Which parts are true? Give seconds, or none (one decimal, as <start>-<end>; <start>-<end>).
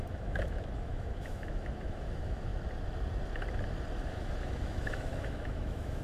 2.5-4.1